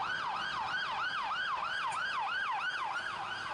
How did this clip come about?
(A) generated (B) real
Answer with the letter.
B